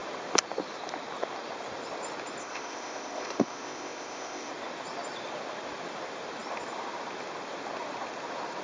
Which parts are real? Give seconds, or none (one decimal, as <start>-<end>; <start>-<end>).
0.0-2.4; 4.5-8.6